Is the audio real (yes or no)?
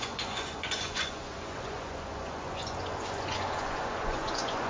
no